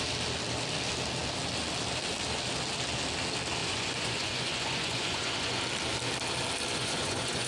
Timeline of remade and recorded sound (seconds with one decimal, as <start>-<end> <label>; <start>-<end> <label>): 0.0-3.6 recorded; 3.6-5.6 remade; 5.6-6.7 recorded; 6.7-7.5 remade